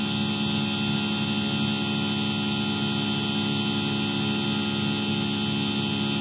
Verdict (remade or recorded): recorded